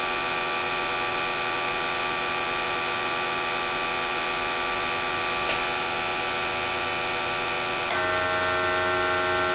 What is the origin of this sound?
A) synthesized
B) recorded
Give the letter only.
B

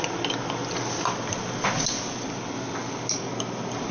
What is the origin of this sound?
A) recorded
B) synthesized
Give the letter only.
A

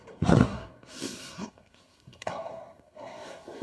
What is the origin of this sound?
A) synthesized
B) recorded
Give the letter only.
A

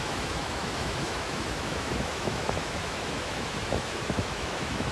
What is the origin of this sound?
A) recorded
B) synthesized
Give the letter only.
B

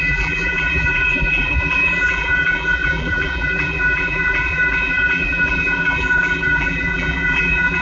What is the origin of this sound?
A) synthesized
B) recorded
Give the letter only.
A